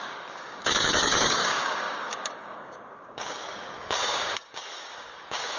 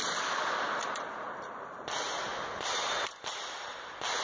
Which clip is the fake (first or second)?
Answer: first